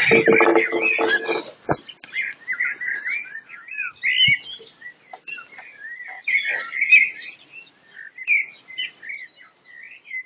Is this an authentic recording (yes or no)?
yes